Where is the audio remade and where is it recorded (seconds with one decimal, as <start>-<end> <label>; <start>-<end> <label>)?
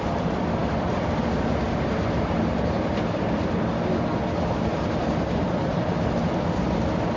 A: 0.0-5.4 recorded; 5.4-6.3 remade; 6.3-7.2 recorded